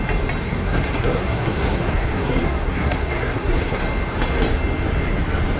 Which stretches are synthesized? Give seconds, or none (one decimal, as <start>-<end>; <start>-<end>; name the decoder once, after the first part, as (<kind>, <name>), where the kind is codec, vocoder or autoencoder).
0.4-3.8 (codec, SNAC)